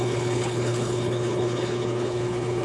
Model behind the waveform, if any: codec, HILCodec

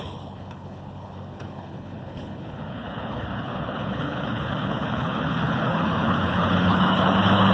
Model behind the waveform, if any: codec, HILCodec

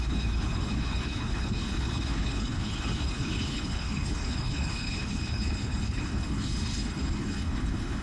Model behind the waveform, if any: codec, HILCodec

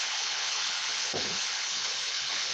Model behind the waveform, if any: codec, HILCodec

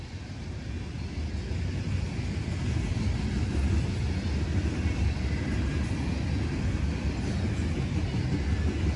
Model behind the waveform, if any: none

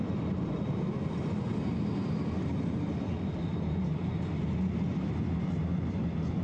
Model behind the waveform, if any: none